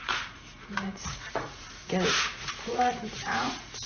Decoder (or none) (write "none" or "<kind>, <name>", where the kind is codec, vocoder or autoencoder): vocoder, Vocos